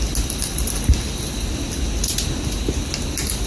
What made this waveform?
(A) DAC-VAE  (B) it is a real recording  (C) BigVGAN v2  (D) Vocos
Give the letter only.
B